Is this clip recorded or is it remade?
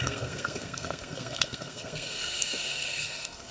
remade